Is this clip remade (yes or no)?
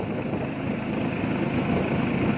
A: no